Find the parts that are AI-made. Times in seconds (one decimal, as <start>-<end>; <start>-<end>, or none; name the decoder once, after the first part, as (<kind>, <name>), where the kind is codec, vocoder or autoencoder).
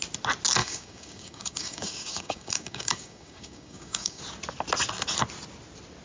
0.6-4.2 (codec, DAC)